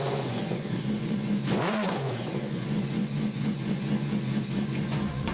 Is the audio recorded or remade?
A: remade